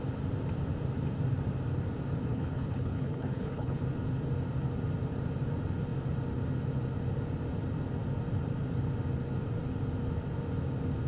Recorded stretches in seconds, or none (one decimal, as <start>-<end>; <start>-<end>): 0.0-2.3; 3.8-11.1